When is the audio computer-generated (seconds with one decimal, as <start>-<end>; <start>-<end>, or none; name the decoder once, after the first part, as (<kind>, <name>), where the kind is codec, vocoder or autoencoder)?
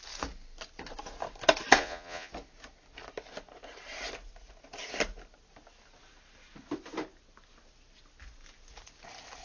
1.8-2.3 (vocoder, Vocos)